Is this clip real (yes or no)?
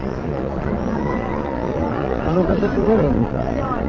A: no